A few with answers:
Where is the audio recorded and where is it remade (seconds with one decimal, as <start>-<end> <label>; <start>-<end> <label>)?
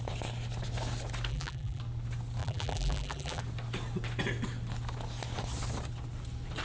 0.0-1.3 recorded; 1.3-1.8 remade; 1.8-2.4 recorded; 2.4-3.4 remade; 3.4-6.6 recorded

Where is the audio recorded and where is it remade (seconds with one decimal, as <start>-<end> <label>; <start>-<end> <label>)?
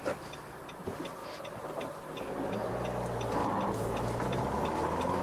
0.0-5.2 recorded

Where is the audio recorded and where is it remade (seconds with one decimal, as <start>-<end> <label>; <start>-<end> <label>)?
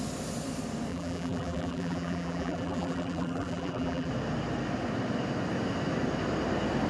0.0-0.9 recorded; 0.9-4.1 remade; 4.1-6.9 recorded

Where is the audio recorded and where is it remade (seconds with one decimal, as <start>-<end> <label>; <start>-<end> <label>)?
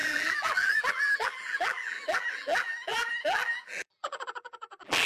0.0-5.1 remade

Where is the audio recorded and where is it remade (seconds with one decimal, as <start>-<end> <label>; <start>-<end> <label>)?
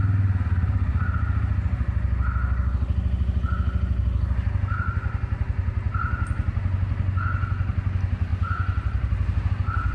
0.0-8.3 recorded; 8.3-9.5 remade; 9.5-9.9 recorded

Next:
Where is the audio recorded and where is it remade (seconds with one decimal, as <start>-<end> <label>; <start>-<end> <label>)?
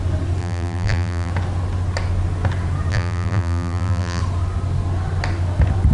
0.0-0.4 recorded; 0.4-1.3 remade; 1.3-2.9 recorded; 2.9-4.2 remade; 4.2-5.9 recorded